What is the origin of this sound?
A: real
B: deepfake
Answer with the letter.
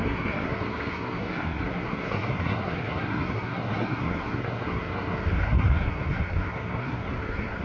B